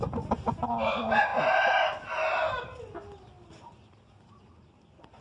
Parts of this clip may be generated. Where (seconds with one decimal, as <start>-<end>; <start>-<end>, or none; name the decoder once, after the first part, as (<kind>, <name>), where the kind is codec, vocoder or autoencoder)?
none